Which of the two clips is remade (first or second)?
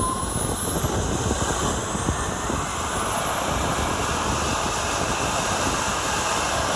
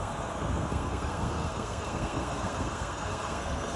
second